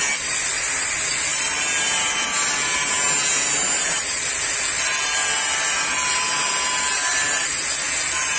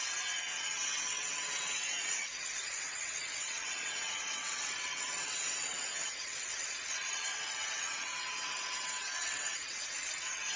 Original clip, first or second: first